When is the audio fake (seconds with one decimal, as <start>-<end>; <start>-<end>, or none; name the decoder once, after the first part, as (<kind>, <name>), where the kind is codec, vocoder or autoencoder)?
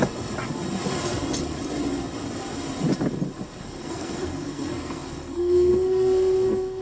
3.6-6.8 (codec, SNAC)